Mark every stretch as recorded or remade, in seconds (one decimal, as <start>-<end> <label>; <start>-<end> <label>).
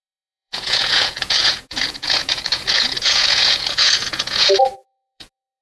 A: 0.0-5.6 remade